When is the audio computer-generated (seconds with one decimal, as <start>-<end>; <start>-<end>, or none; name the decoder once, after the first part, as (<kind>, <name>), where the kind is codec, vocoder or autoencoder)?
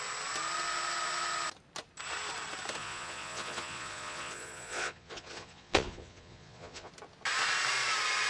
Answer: 2.8-6.9 (vocoder, Vocos)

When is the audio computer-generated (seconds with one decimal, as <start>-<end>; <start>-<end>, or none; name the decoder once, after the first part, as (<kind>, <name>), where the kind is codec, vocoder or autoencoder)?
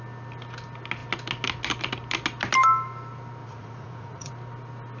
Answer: 3.4-4.3 (vocoder, Vocos)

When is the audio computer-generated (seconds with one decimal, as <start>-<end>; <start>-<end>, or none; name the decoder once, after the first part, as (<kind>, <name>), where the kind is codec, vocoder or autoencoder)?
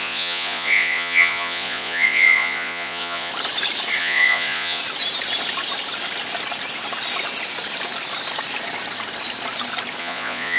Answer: 0.0-3.3 (vocoder, Vocos); 4.0-4.8; 10.0-10.6